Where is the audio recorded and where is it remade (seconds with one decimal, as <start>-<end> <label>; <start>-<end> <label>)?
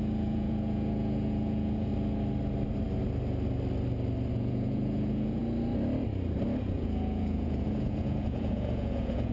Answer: 0.0-1.9 remade; 1.9-4.3 recorded; 4.3-5.4 remade; 5.4-6.6 recorded; 6.6-9.3 remade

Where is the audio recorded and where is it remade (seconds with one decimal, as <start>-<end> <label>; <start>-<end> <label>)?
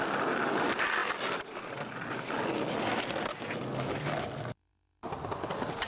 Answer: 0.0-5.9 recorded